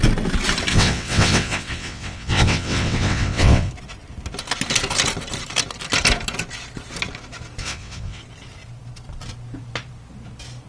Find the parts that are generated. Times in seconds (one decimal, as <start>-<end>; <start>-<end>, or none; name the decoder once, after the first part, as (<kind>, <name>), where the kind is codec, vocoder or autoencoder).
0.7-3.7 (vocoder, WaveNeXt); 7.6-8.2